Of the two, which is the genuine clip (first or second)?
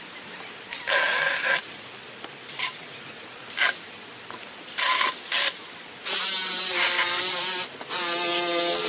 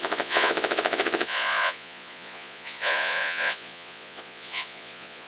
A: first